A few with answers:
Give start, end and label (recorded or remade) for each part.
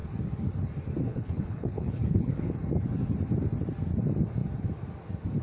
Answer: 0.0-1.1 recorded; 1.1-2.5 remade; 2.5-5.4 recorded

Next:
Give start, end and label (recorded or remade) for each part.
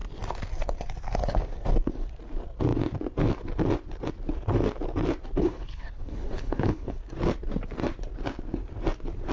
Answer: 0.0-5.4 recorded; 5.4-7.0 remade; 7.0-9.3 recorded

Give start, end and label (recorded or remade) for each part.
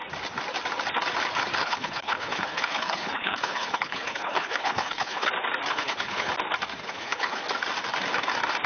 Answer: 0.0-1.6 recorded; 1.6-5.3 remade; 5.3-5.7 recorded; 5.7-6.3 remade; 6.3-6.8 recorded; 6.8-7.4 remade; 7.4-8.7 recorded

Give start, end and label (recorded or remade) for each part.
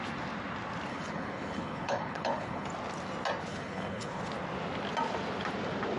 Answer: 0.0-0.9 recorded; 0.9-2.7 remade; 2.7-3.5 recorded; 3.5-4.2 remade; 4.2-6.0 recorded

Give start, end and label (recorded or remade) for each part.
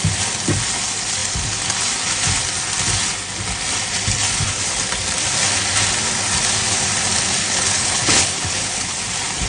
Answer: 0.0-7.4 recorded; 7.4-8.9 remade; 8.9-9.5 recorded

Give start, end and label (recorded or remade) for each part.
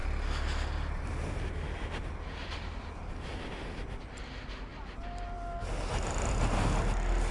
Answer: 0.0-7.3 recorded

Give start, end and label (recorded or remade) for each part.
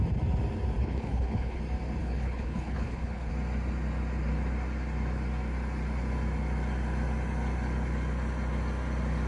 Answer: 0.0-0.8 recorded; 0.8-1.6 remade; 1.6-2.0 recorded; 2.0-3.3 remade; 3.3-9.3 recorded